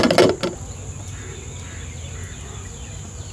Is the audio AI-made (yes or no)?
no